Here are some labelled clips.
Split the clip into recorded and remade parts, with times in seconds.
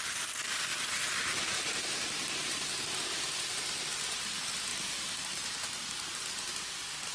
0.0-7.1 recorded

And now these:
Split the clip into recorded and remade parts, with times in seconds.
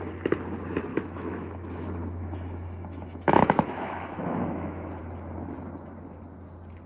0.0-0.9 recorded; 0.9-5.0 remade; 5.0-6.9 recorded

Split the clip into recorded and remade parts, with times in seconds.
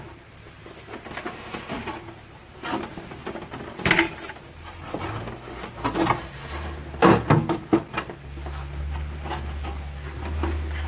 0.0-10.9 recorded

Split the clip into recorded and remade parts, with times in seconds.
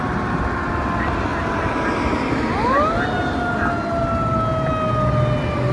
0.0-5.7 recorded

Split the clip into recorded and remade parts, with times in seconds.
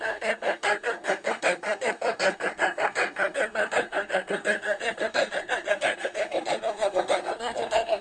0.0-8.0 remade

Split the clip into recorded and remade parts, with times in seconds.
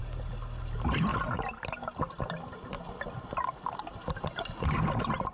0.0-0.6 recorded; 0.6-1.1 remade; 1.1-4.2 recorded; 4.2-5.3 remade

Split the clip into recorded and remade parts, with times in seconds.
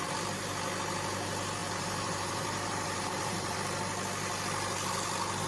0.0-1.6 recorded; 1.6-3.6 remade; 3.6-5.5 recorded